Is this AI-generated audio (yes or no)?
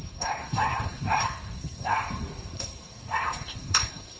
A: yes